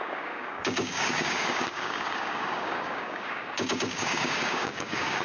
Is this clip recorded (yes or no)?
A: no